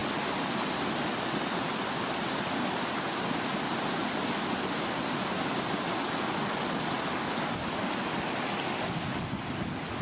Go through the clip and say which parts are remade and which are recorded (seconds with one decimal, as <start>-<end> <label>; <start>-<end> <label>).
0.0-10.0 recorded